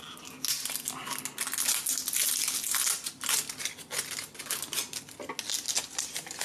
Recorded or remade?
recorded